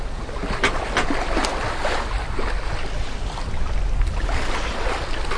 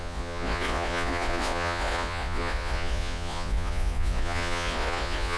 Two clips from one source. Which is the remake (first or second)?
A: second